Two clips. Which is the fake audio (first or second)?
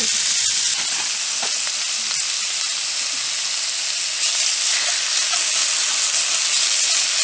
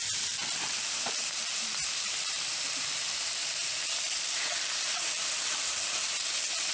second